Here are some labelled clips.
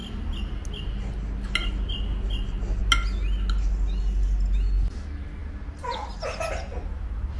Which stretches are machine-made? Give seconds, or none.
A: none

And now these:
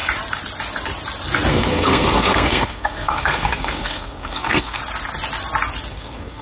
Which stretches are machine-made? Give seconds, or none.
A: 1.5-4.8 (codec, SNAC); 5.9-6.4

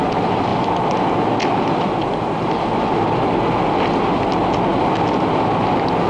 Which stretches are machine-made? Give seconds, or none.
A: none

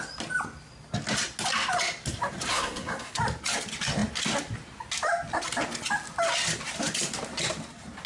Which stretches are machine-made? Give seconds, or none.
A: 2.5-3.2 (codec, SNAC)

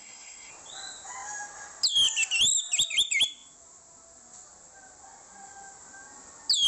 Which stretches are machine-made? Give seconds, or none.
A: 0.0-0.5 (codec, SNAC)

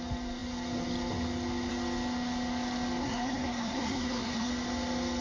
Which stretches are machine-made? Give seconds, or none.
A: 3.0-4.5 (codec, SNAC)

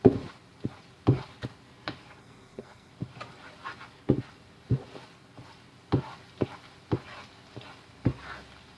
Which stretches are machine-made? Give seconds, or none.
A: 2.2-2.9 (codec, SNAC)

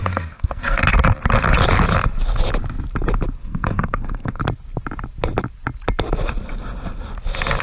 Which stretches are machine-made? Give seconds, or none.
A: 0.0-0.8 (codec, SNAC); 3.4-4.4